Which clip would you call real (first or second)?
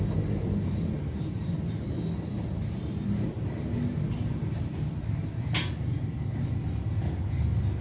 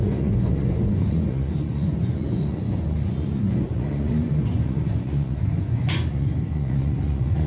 first